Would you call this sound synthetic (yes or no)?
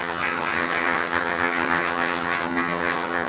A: yes